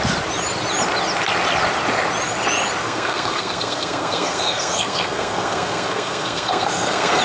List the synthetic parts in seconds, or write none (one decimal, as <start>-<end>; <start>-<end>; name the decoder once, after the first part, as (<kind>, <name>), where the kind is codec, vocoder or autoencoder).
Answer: 2.8-7.2 (codec, SNAC)